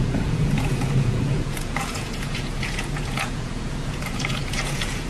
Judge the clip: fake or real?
fake